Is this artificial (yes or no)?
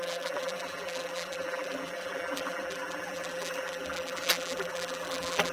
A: yes